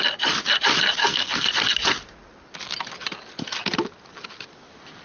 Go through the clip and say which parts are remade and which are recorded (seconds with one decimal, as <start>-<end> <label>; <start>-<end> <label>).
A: 0.0-1.0 recorded; 1.0-1.5 remade; 1.5-5.0 recorded